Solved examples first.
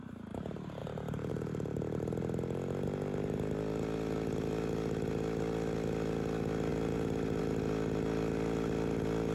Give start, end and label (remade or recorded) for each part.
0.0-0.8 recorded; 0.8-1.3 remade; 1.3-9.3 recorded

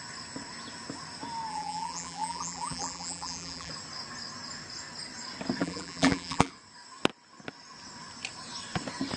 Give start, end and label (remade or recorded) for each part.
0.0-1.5 recorded; 1.5-3.7 remade; 3.7-5.6 recorded; 5.6-6.5 remade; 6.5-9.2 recorded

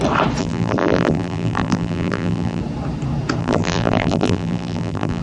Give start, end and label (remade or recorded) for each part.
0.0-0.4 recorded; 0.4-2.6 remade; 2.6-3.4 recorded; 3.4-5.2 remade